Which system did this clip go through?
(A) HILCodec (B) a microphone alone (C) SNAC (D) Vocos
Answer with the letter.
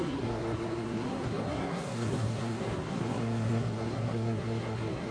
C